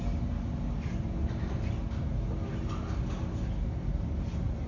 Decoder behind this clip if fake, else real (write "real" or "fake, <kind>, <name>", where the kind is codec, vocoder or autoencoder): real